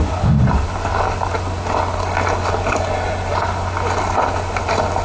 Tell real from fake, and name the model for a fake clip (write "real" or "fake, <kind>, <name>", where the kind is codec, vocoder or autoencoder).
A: real